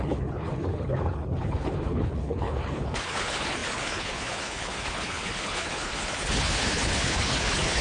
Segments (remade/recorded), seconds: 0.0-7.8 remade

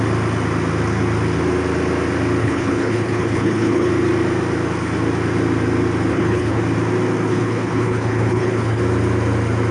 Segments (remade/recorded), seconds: 0.0-2.4 recorded; 2.4-3.9 remade; 3.9-6.1 recorded; 6.1-6.6 remade; 6.6-7.3 recorded; 7.3-8.8 remade; 8.8-9.7 recorded